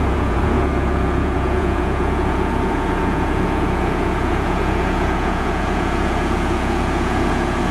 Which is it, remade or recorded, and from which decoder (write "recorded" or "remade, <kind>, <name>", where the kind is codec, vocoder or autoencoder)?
remade, vocoder, Vocos